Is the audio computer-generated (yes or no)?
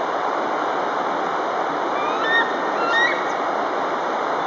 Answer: no